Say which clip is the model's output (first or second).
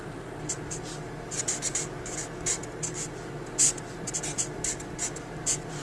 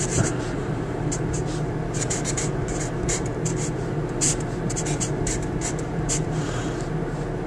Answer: second